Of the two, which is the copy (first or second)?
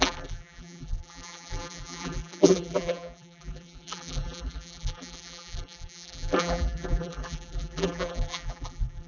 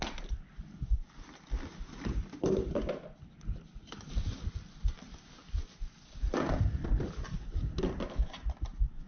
first